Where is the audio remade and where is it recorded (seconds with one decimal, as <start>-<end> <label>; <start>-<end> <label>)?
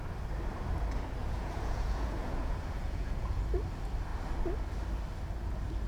0.0-1.2 recorded; 1.2-3.4 remade; 3.4-5.9 recorded